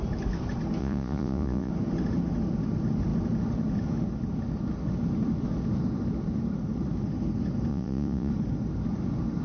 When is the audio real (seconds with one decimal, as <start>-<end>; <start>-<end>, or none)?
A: 0.0-0.8; 1.7-7.7; 8.3-9.4